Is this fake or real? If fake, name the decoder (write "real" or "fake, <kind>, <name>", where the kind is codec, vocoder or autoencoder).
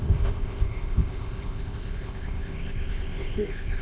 fake, codec, ZipCodec